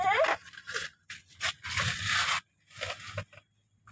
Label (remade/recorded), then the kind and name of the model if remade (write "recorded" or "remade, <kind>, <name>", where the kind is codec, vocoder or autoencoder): recorded